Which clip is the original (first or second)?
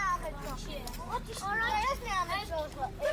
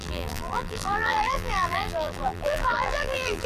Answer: first